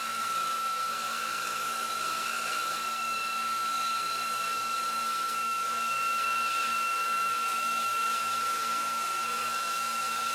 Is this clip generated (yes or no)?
yes